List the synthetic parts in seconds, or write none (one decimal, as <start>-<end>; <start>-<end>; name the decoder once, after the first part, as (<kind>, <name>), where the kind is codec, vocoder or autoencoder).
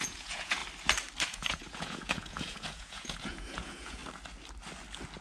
0.0-0.6 (vocoder, Vocos); 1.3-4.0